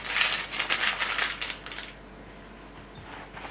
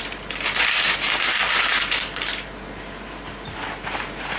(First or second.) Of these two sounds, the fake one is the second